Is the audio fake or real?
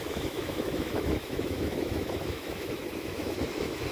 fake